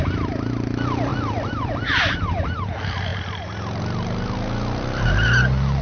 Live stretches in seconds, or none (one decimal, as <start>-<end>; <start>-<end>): 0.0-5.8